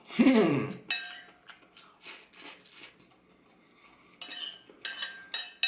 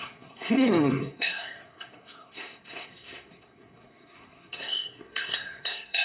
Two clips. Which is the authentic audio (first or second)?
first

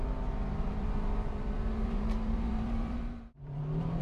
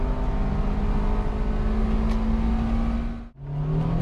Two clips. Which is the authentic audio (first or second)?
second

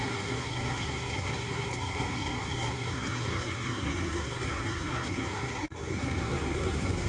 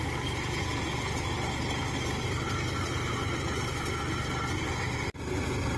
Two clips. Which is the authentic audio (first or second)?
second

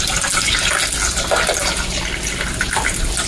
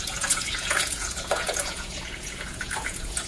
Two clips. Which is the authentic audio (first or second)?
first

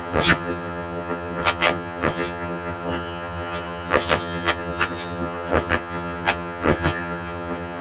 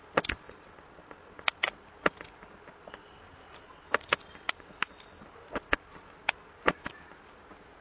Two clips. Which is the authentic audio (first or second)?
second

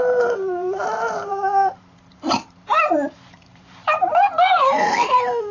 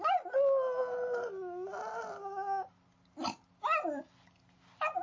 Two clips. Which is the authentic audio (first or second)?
second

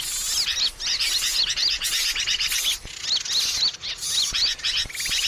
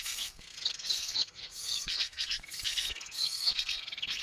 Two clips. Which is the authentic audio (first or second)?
first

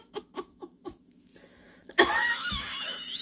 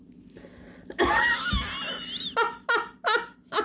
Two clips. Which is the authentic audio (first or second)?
second